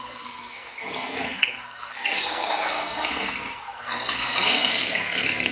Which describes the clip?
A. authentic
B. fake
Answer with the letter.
B